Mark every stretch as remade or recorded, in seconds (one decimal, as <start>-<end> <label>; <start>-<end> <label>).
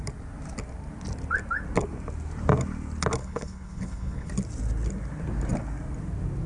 0.0-3.2 recorded; 3.2-4.3 remade; 4.3-6.5 recorded